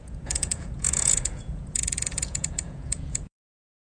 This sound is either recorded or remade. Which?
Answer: remade